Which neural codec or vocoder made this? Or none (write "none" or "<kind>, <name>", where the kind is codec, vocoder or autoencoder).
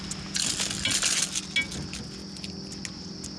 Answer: none